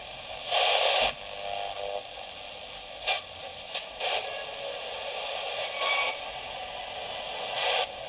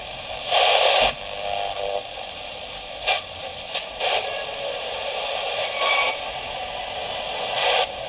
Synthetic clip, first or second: second